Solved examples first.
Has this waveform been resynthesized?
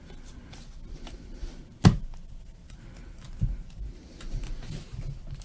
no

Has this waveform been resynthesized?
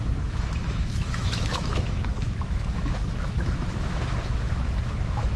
yes